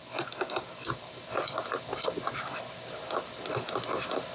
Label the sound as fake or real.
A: real